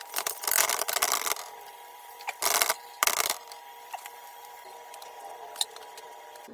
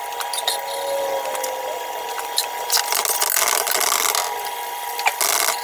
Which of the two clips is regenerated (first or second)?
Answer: first